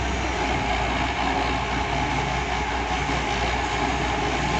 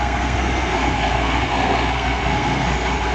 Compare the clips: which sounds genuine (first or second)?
first